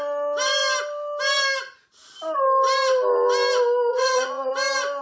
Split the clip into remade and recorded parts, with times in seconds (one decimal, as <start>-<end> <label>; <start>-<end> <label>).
0.0-3.9 recorded; 3.9-4.5 remade; 4.5-5.0 recorded